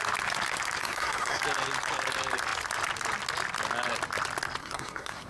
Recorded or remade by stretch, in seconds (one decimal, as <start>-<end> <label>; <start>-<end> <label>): 0.0-0.8 recorded; 0.8-1.4 remade; 1.4-4.6 recorded; 4.6-5.3 remade